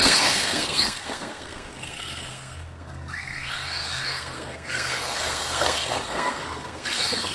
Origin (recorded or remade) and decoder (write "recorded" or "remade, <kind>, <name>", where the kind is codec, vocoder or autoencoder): remade, codec, SNAC